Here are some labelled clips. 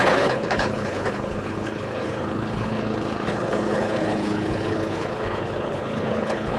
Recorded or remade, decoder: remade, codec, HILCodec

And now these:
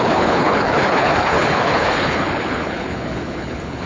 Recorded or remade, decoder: remade, codec, HILCodec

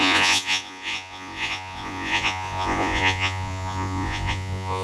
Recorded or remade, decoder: remade, vocoder, Vocos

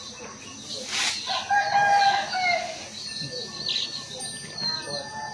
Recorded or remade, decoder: recorded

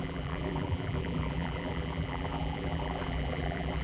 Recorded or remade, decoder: remade, vocoder, BigVGAN v2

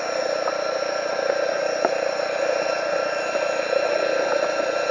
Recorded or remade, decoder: recorded